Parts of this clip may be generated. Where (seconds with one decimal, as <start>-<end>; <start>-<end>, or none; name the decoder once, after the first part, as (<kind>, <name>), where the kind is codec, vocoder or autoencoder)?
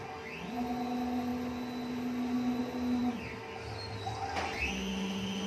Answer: none